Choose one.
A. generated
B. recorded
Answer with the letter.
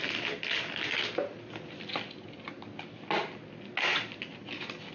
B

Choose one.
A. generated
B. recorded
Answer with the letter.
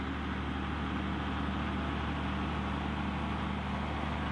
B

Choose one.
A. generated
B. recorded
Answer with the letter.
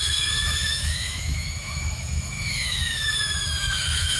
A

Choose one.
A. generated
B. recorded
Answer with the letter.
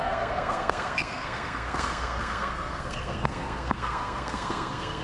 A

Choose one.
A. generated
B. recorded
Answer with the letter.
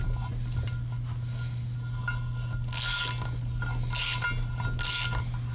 B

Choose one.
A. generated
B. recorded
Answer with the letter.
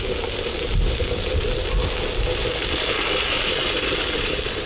B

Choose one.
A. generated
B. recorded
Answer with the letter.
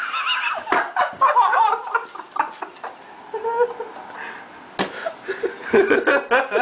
B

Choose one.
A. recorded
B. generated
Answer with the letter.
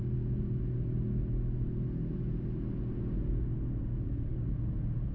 A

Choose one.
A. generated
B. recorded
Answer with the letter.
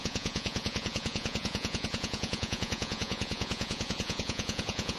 A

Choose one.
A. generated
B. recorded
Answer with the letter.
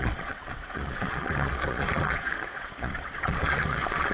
A